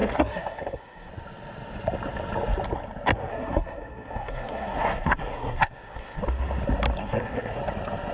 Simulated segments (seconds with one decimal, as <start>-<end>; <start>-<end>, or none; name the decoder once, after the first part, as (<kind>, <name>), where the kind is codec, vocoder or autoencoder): 0.0-1.1 (codec, SNAC); 3.3-6.2; 7.0-7.6